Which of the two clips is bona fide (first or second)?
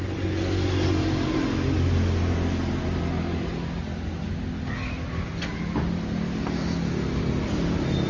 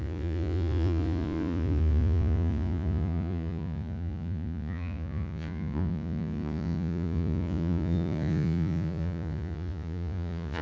first